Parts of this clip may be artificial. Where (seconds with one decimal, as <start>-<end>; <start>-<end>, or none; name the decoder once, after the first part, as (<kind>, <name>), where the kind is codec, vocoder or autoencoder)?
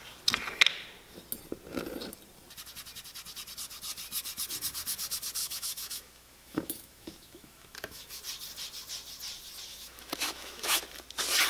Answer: 5.4-8.2 (autoencoder, DAC-VAE); 9.7-10.8